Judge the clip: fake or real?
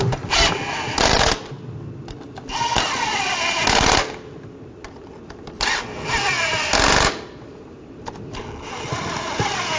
real